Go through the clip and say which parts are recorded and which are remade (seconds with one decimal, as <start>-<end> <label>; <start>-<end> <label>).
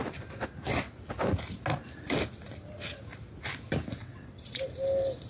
0.0-4.0 recorded; 4.0-4.6 remade; 4.6-5.3 recorded